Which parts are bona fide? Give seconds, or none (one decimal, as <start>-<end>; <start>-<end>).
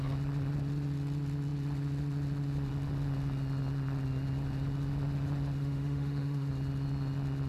0.0-5.6; 6.5-7.5